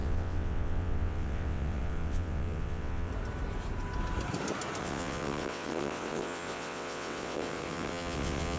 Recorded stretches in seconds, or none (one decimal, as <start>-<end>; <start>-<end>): 3.1-4.8